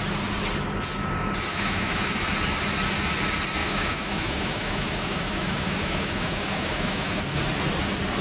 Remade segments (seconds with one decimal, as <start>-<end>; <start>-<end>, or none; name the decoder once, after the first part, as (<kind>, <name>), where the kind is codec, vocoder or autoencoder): 1.5-2.1 (autoencoder, DAC-VAE); 3.6-7.2